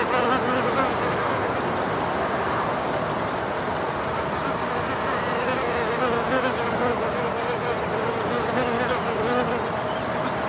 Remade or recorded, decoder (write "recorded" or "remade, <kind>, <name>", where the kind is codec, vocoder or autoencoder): recorded